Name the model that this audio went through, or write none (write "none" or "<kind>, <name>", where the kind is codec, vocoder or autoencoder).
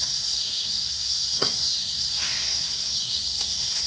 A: codec, SNAC